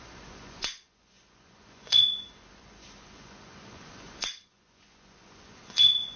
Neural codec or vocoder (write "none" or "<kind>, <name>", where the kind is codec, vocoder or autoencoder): vocoder, Vocos